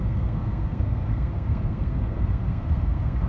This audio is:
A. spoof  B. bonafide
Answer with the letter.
A